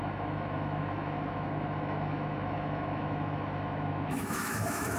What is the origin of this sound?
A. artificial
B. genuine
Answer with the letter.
A